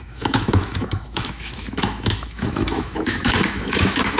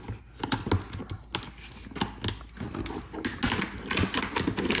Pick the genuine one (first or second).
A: second